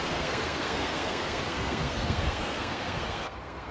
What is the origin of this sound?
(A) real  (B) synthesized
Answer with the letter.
B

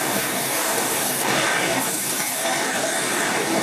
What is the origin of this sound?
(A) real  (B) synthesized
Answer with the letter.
B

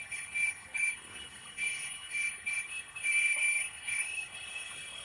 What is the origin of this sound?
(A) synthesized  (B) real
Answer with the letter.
A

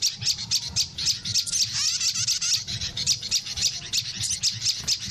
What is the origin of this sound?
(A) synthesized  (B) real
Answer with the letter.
B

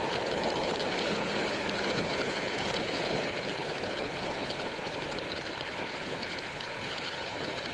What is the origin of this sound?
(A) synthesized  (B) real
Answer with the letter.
A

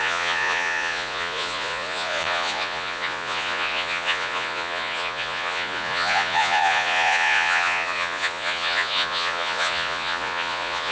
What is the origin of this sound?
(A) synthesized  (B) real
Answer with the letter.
A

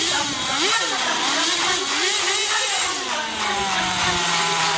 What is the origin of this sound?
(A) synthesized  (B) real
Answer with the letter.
B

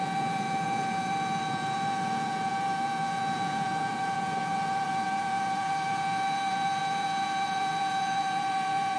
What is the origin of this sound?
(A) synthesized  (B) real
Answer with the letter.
A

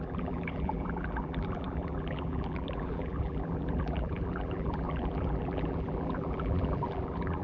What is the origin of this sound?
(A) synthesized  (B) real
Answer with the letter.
A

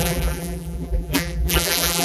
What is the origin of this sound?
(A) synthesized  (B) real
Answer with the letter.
A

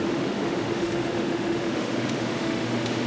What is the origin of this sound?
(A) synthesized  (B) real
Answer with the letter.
A